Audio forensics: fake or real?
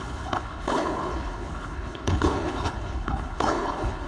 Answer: fake